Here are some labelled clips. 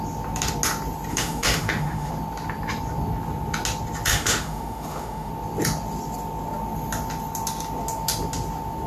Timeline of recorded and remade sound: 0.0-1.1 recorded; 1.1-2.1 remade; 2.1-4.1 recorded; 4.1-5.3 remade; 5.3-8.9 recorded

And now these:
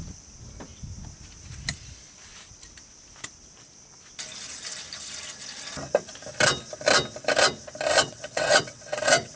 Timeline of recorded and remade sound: 0.0-8.0 recorded; 8.0-9.4 remade

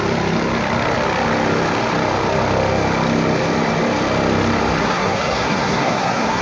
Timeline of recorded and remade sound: 0.0-4.8 recorded; 4.8-6.4 remade